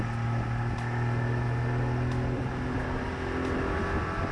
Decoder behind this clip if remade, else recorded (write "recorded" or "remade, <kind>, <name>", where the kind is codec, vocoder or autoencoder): recorded